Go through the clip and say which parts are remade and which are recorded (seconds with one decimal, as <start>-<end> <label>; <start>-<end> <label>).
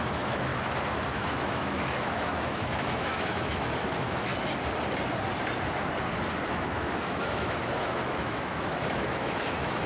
0.0-0.5 remade; 0.5-1.1 recorded; 1.1-4.3 remade; 4.3-6.5 recorded; 6.5-9.9 remade